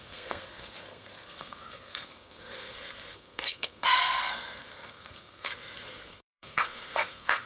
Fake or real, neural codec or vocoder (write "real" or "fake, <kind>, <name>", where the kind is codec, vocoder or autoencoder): fake, codec, SNAC